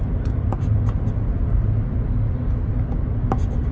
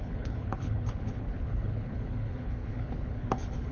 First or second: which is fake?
second